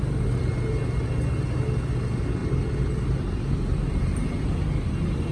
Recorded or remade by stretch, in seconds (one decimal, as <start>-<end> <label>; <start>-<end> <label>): 0.0-5.3 recorded